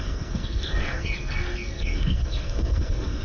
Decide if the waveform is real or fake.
fake